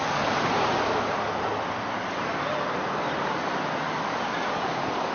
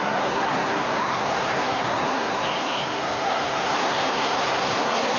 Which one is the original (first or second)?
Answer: first